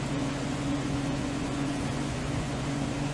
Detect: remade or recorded remade